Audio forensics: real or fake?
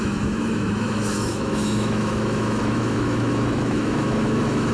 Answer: fake